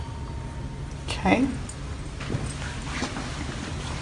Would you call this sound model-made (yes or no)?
no